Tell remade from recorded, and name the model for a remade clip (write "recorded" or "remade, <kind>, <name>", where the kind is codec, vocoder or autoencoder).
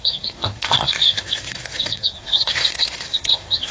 remade, codec, SNAC